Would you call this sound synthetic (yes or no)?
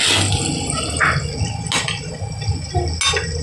no